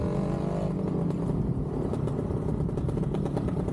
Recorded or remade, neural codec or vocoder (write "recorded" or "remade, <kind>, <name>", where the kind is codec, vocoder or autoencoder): recorded